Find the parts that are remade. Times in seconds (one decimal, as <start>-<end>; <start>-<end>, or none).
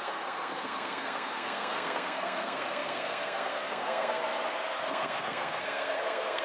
0.0-4.2; 4.8-6.4